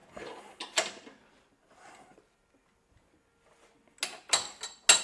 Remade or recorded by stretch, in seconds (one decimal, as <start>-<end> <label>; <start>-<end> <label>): 0.0-5.0 recorded